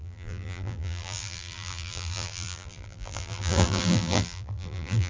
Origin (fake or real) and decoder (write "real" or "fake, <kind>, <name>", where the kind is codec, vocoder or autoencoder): fake, vocoder, BigVGAN v2